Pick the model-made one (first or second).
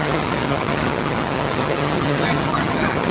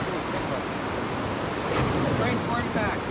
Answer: first